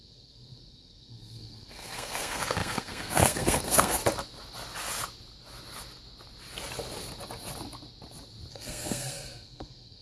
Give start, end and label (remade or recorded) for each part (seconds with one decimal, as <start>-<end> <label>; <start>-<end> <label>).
0.0-4.0 remade; 4.0-8.5 recorded; 8.5-10.0 remade